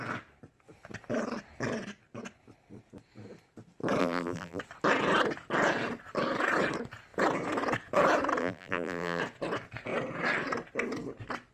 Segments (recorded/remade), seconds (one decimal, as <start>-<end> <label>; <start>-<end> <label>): 0.0-4.0 recorded; 4.0-4.6 remade; 4.6-8.4 recorded; 8.4-9.2 remade; 9.2-11.5 recorded